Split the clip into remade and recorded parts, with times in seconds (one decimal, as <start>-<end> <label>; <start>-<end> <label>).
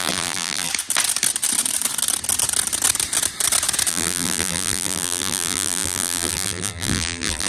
0.0-0.7 remade; 0.7-3.9 recorded; 3.9-7.5 remade